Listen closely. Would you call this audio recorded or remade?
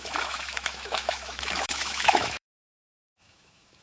remade